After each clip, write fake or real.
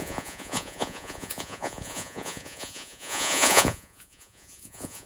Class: fake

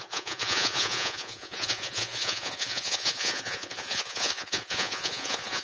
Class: fake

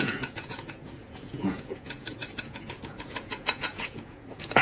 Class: fake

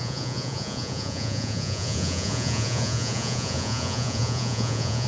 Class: fake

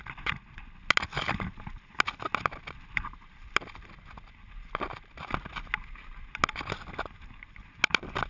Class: real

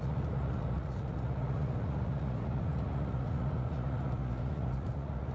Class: fake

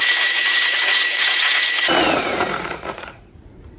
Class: fake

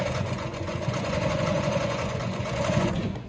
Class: fake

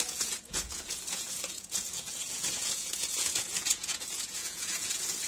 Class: fake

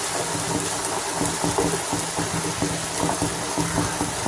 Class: real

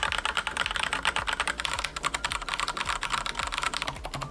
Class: real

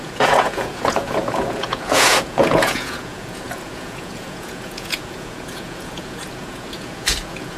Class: fake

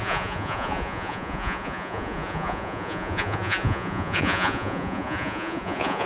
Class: fake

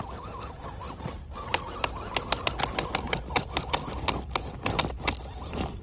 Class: real